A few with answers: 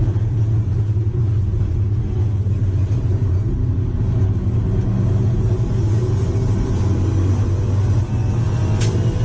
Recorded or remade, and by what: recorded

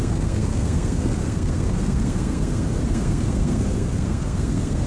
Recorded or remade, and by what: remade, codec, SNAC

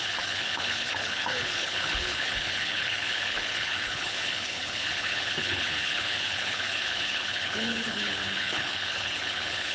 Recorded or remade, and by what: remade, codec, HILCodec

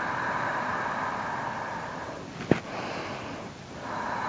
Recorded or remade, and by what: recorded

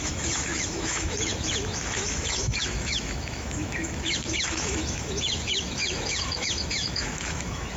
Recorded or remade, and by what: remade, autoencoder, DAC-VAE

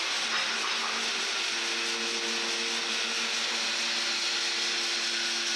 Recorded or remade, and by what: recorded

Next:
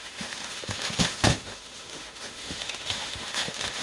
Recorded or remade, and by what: remade, autoencoder, DAC-VAE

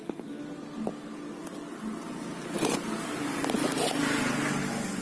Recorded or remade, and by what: recorded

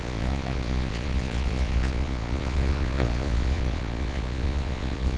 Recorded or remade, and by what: remade, vocoder, Vocos